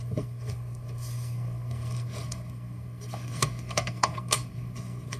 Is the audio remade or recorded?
remade